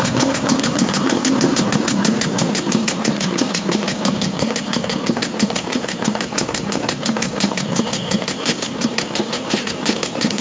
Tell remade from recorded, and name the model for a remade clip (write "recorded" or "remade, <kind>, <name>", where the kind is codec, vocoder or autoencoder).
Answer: remade, codec, SNAC